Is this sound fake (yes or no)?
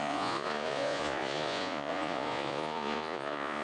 yes